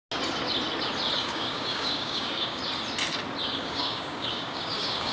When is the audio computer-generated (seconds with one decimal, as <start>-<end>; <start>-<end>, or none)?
1.2-2.6; 3.4-5.1